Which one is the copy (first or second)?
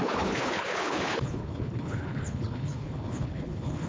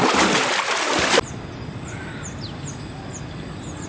first